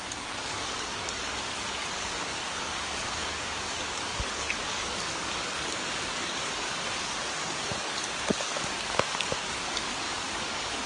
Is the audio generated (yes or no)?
yes